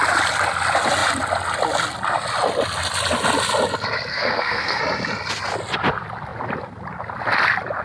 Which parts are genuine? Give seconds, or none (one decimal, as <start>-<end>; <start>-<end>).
0.0-4.1; 4.8-7.8